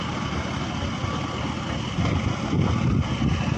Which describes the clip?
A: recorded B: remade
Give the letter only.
A